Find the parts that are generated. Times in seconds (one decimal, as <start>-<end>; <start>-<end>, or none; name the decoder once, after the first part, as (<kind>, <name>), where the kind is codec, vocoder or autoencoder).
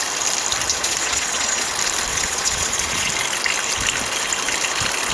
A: 0.7-1.7 (vocoder, Vocos); 2.1-3.1